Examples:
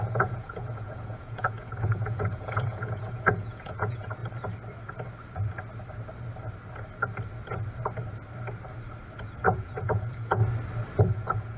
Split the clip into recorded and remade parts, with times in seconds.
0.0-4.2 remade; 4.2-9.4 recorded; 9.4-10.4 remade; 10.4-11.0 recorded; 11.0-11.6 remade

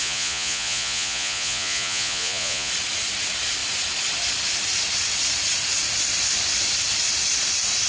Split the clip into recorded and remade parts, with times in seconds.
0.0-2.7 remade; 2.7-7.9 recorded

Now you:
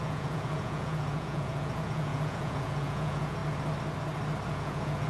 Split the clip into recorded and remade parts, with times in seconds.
0.0-3.4 remade; 3.4-4.5 recorded; 4.5-5.1 remade